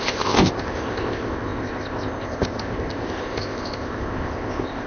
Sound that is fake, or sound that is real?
fake